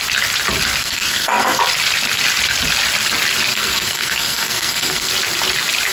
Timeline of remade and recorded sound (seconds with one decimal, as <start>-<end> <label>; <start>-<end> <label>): 0.0-0.8 recorded; 0.8-1.6 remade; 1.6-3.5 recorded; 3.5-5.1 remade; 5.1-5.9 recorded